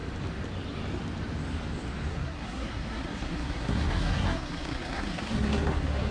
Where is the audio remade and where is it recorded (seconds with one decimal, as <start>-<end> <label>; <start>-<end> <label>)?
0.0-2.1 recorded; 2.1-6.1 remade